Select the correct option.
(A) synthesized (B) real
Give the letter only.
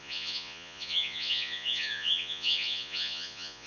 A